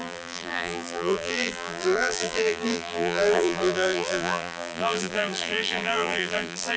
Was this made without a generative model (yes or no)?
no